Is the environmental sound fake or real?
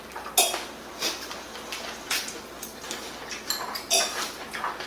real